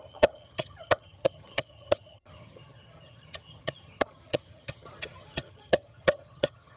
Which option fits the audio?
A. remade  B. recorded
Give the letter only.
A